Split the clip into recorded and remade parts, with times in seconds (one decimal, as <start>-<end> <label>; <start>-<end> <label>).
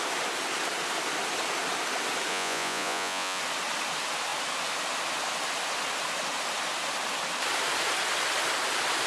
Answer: 0.0-2.3 recorded; 2.3-3.4 remade; 3.4-9.1 recorded